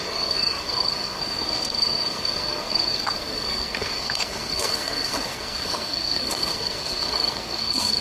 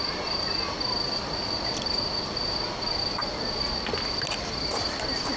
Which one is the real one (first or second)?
second